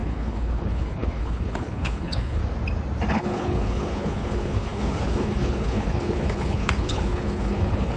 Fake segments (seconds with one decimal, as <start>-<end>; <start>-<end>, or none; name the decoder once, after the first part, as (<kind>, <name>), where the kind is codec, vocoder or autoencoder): 0.0-2.4 (codec, HILCodec); 3.1-8.0